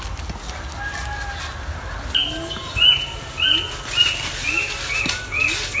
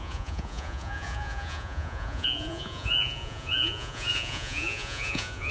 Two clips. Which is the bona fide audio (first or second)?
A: first